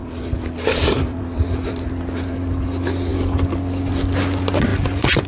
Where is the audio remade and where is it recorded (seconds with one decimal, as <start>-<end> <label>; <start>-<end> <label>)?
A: 0.0-1.9 remade; 1.9-4.7 recorded; 4.7-5.3 remade